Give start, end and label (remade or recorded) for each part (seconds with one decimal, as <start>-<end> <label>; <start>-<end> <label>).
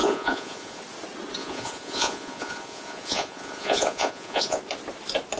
0.0-0.8 remade; 0.8-1.4 recorded; 1.4-4.6 remade; 4.6-5.4 recorded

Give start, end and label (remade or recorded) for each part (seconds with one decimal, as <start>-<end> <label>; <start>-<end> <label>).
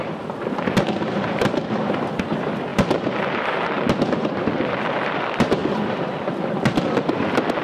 0.0-7.6 recorded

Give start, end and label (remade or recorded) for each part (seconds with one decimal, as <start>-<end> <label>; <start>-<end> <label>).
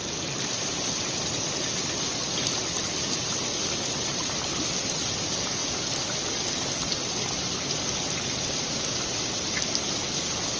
0.0-10.6 recorded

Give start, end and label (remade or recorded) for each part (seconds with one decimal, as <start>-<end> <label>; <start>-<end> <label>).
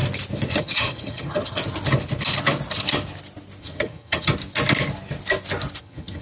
0.0-0.6 recorded; 0.6-1.6 remade; 1.6-3.6 recorded; 3.6-4.3 remade; 4.3-5.8 recorded; 5.8-6.2 remade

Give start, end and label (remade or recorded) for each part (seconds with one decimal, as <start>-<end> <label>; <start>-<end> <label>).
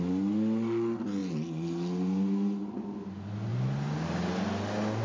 0.0-5.0 recorded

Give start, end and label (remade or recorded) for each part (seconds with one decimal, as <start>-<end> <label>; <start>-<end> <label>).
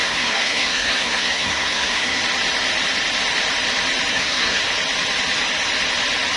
0.0-2.2 remade; 2.2-4.1 recorded; 4.1-4.6 remade; 4.6-6.4 recorded